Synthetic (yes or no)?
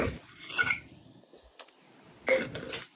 no